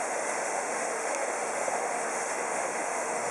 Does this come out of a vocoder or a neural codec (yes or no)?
yes